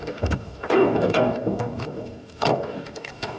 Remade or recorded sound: remade